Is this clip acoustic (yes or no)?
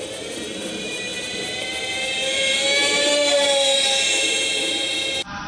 no